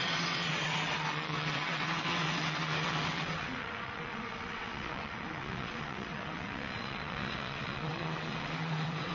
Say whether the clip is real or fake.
fake